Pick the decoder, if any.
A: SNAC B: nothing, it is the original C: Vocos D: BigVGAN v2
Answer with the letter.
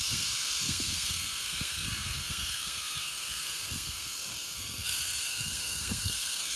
A